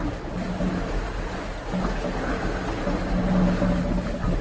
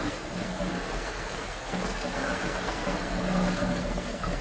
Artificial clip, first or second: second